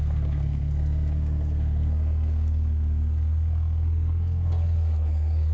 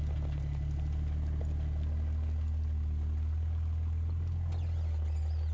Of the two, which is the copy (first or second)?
first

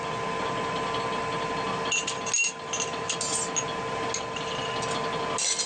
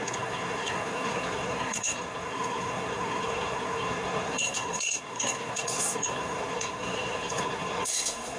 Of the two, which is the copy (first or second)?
second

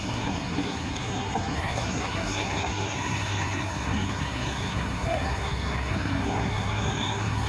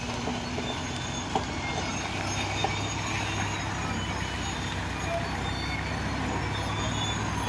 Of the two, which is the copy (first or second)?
first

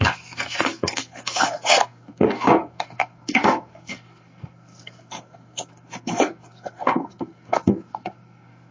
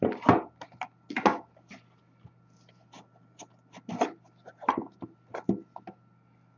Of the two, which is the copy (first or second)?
first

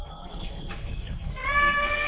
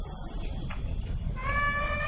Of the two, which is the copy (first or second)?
first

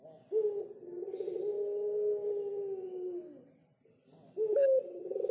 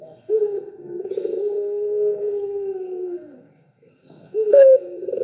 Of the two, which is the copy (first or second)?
second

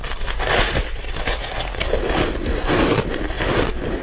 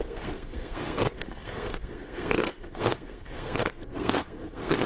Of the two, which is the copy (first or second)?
second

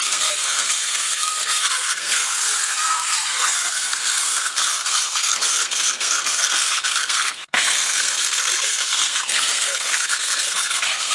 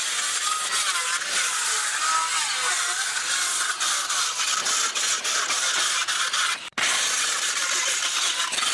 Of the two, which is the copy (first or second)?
first